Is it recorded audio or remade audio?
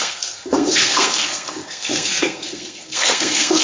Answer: remade